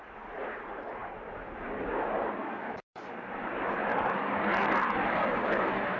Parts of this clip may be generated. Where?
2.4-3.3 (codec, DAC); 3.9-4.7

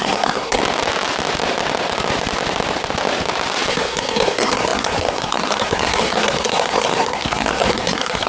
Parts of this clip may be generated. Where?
0.0-0.6 (codec, SNAC); 3.7-8.3

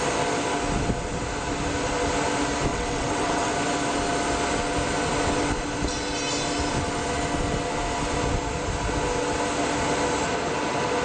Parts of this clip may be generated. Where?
2.7-3.5 (vocoder, WaveNeXt)

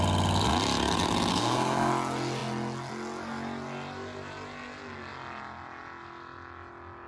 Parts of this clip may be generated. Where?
1.3-1.9 (codec, SNAC)